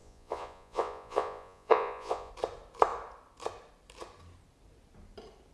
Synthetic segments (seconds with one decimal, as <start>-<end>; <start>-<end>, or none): 0.0-2.3

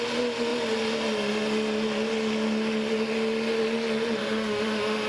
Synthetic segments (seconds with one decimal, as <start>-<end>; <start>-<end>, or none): 4.2-5.1

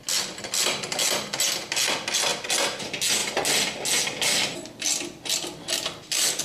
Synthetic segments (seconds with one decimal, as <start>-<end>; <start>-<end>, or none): none

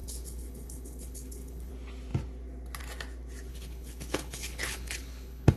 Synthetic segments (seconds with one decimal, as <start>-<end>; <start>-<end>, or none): 0.0-1.7; 3.5-5.6

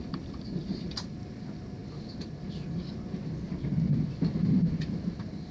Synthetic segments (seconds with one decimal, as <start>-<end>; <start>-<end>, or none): 0.0-1.8; 5.1-5.5

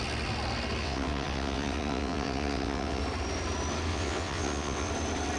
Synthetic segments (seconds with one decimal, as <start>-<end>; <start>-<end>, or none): 0.8-3.0; 3.9-4.9

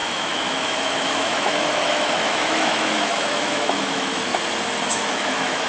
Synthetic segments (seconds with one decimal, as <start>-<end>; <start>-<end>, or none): 0.0-4.3; 4.9-5.7